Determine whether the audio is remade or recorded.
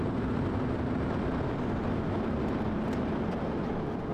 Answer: remade